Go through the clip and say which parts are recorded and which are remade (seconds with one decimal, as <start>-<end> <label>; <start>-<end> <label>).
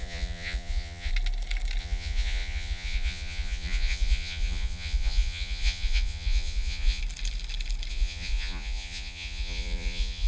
0.0-1.1 remade; 1.1-1.8 recorded; 1.8-7.0 remade; 7.0-7.9 recorded; 7.9-10.3 remade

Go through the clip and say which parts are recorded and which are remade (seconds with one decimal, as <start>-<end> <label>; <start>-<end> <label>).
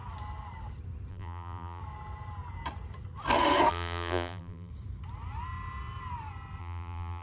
0.0-1.1 recorded; 1.1-1.8 remade; 1.8-3.7 recorded; 3.7-4.7 remade; 4.7-6.6 recorded; 6.6-7.2 remade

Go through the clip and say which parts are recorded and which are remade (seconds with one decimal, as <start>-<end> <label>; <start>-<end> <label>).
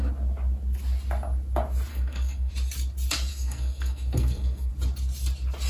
0.0-1.9 recorded; 1.9-2.5 remade; 2.5-3.3 recorded; 3.3-4.7 remade; 4.7-5.7 recorded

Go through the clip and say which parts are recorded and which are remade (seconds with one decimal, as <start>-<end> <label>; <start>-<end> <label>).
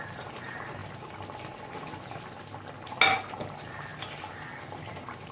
0.0-0.8 remade; 0.8-3.2 recorded; 3.2-3.9 remade; 3.9-4.8 recorded; 4.8-5.3 remade